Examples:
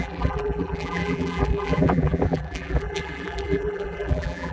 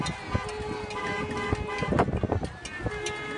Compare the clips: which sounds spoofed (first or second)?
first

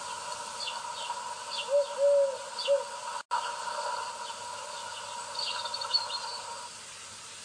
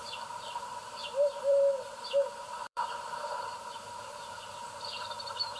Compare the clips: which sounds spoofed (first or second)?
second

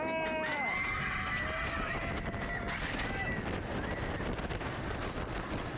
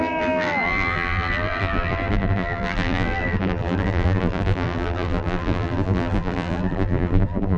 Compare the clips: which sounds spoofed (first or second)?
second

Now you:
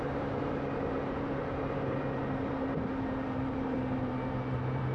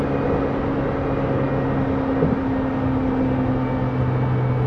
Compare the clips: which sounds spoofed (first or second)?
first